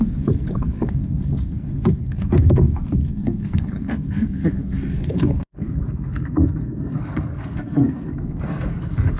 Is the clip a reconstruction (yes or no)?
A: yes